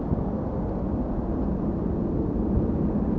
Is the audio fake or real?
real